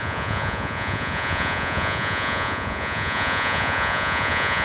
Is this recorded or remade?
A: remade